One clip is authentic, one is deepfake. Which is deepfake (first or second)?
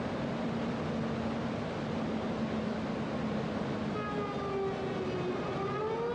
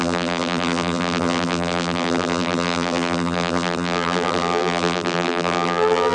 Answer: second